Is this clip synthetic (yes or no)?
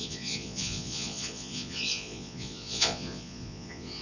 yes